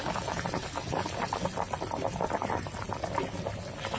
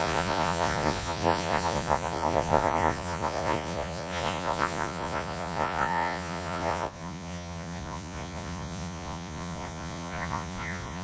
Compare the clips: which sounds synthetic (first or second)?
second